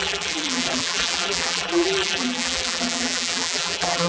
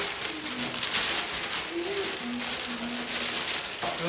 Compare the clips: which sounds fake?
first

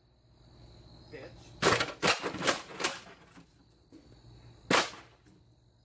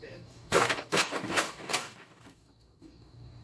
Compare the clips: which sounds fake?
second